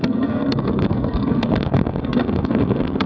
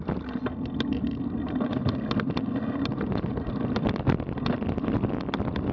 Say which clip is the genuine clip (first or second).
second